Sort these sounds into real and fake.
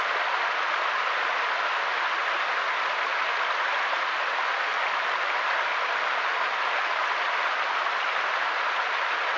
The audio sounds real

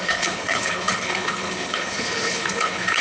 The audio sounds fake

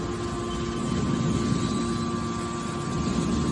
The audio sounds real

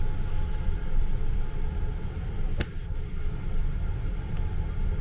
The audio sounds real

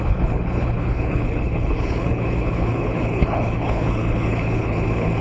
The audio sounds fake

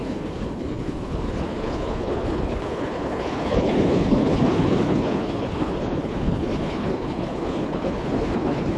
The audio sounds fake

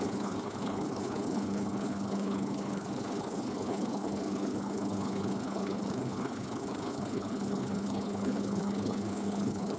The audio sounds fake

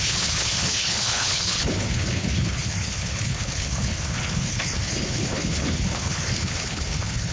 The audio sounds fake